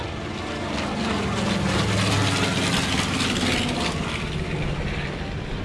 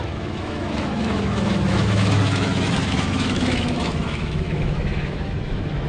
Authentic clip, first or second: first